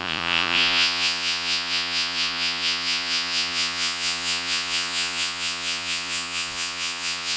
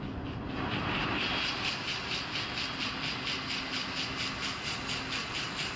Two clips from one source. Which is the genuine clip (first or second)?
second